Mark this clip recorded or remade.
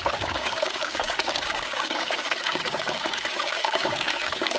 remade